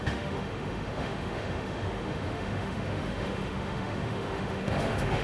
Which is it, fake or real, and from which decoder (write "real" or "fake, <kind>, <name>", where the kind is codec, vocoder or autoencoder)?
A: fake, autoencoder, DAC-VAE